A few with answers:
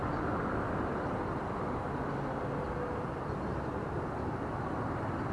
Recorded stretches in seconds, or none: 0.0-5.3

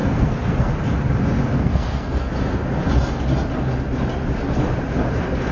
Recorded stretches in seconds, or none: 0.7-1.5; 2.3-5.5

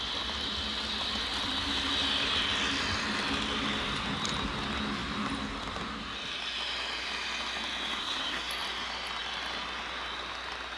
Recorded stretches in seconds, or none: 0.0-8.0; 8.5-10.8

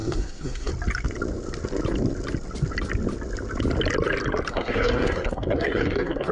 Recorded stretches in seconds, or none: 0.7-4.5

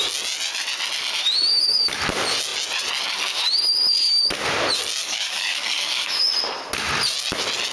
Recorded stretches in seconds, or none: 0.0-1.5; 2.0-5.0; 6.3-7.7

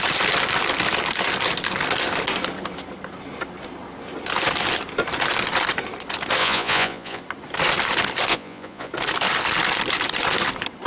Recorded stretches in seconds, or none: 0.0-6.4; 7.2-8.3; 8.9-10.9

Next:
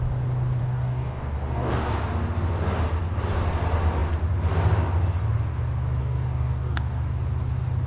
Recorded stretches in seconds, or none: 0.0-0.6; 1.9-6.0; 7.0-7.9